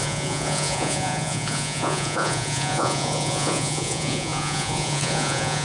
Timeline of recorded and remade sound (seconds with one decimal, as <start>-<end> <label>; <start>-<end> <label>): 0.0-5.6 remade